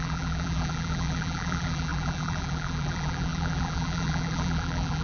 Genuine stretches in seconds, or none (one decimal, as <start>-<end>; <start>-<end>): none